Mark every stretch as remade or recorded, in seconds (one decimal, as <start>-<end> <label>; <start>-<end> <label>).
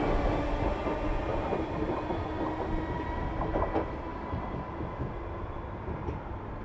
0.0-1.3 recorded; 1.3-2.0 remade; 2.0-6.6 recorded